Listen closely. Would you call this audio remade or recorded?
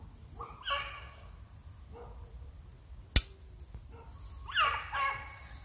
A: recorded